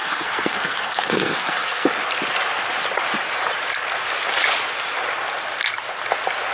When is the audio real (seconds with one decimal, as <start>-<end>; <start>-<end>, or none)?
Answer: 1.9-6.5